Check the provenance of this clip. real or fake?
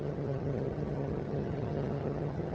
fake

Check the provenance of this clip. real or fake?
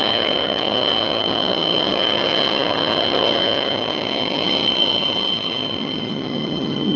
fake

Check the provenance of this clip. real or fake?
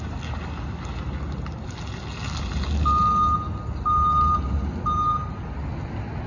real